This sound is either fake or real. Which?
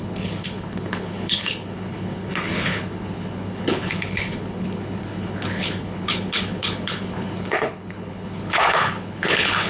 fake